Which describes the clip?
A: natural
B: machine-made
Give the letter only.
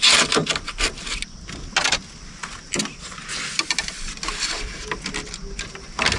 A